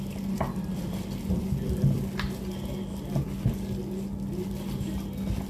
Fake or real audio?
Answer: real